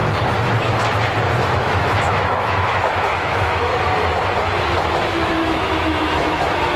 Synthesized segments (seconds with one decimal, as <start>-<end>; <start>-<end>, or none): 1.5-3.7; 4.9-6.8